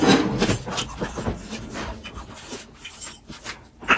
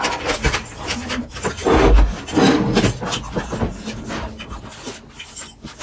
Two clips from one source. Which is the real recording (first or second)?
second